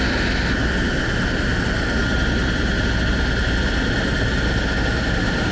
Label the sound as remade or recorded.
recorded